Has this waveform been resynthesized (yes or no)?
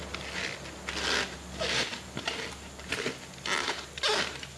no